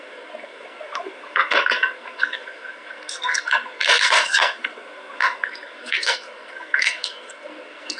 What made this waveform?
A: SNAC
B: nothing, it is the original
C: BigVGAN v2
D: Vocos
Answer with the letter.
A